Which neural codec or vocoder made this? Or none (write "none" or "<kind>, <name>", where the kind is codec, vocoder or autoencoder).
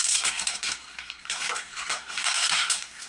codec, SNAC